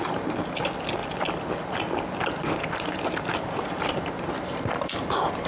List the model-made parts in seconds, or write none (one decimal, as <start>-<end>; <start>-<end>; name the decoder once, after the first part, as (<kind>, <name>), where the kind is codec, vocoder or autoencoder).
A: none